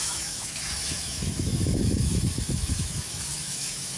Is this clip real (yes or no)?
no